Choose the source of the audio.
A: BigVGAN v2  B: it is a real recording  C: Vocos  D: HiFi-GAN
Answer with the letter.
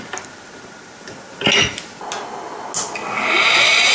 B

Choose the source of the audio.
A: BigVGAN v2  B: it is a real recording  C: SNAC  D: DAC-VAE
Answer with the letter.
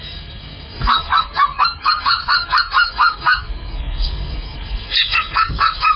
C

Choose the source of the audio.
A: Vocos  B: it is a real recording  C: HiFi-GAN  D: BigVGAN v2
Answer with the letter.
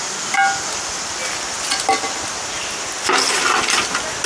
B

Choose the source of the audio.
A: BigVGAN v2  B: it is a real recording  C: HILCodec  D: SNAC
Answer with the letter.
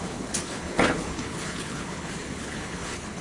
C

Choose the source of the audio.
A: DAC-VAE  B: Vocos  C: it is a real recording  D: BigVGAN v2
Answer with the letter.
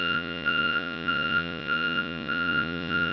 B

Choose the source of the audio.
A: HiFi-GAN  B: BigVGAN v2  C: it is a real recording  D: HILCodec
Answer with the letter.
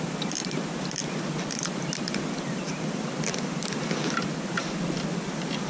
B